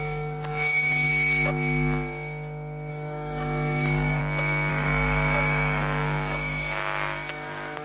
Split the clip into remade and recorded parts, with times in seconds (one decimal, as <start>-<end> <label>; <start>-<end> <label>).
0.0-1.1 remade; 1.1-2.9 recorded; 2.9-4.2 remade; 4.2-4.7 recorded; 4.7-7.8 remade